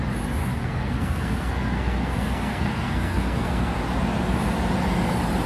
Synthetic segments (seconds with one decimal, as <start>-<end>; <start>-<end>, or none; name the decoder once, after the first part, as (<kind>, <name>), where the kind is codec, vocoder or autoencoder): 0.4-3.7 (codec, SNAC)